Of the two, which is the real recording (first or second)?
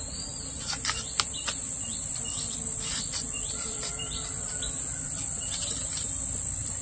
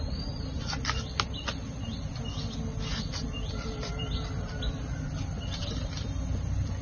second